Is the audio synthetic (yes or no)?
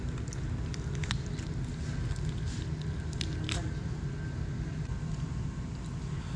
no